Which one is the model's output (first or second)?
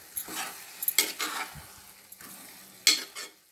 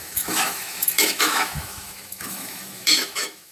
second